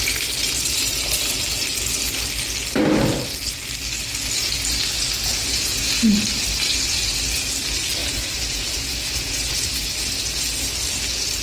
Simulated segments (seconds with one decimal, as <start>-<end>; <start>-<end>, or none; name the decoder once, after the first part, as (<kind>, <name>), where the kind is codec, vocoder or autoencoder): 5.3-6.1 (vocoder, Vocos); 8.0-9.5